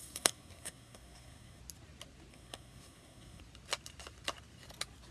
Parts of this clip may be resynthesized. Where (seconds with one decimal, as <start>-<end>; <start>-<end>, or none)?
0.0-1.6; 2.3-3.4